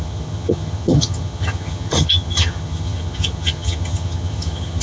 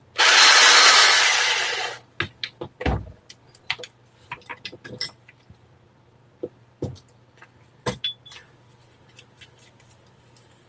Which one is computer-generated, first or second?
first